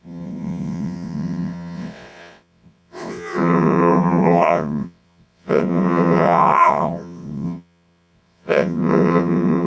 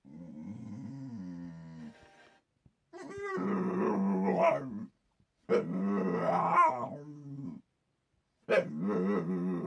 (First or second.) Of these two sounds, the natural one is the second